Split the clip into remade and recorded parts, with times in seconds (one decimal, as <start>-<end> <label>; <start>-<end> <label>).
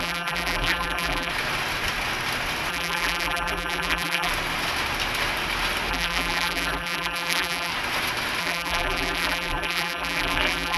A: 0.0-1.3 remade; 1.3-2.7 recorded; 2.7-4.3 remade; 4.3-5.9 recorded; 5.9-7.7 remade; 7.7-8.4 recorded; 8.4-10.8 remade